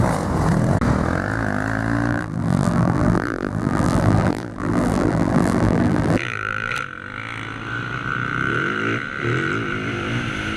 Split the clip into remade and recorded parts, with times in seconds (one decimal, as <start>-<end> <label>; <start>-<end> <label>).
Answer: 0.0-2.1 recorded; 2.1-6.7 remade; 6.7-10.6 recorded